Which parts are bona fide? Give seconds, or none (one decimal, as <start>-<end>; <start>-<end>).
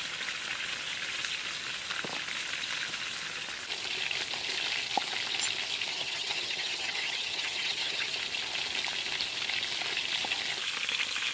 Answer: 0.0-5.9; 8.1-11.3